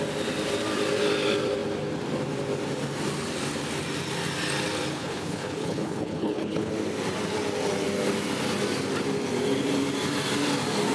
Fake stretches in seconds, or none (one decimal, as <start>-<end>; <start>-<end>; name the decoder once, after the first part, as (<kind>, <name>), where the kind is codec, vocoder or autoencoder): 4.9-6.7 (codec, HILCodec)